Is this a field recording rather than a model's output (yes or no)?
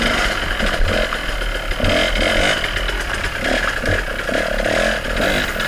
yes